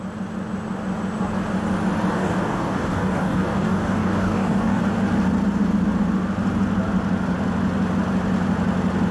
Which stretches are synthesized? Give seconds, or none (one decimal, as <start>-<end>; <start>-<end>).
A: 2.1-4.8